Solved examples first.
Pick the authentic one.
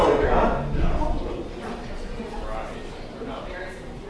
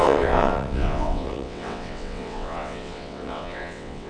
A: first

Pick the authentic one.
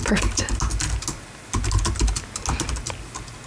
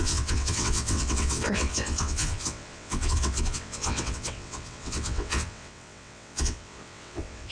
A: first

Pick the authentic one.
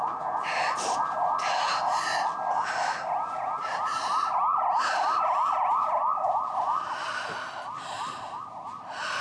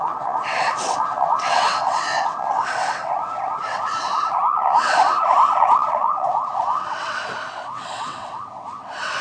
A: first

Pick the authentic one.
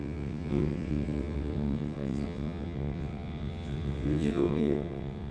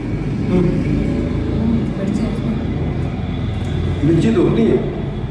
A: second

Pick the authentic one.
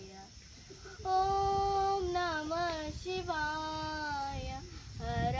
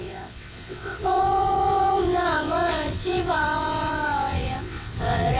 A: first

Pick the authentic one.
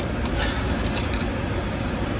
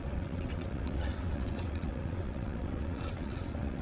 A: first